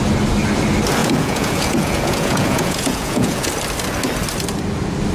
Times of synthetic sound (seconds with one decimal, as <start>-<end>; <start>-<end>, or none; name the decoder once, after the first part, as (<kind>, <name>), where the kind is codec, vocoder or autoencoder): 1.0-3.5 (vocoder, Vocos)